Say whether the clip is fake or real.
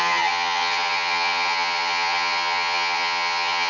fake